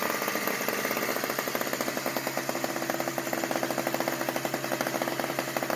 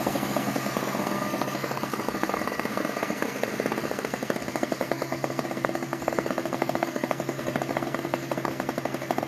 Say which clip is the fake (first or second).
second